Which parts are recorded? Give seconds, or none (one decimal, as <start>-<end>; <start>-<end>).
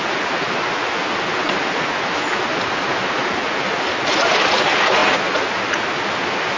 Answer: 0.0-6.6